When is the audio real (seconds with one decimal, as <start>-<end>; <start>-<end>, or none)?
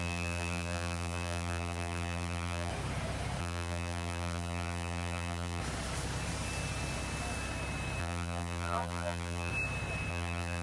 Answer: 2.7-3.4; 5.6-8.0; 9.5-10.1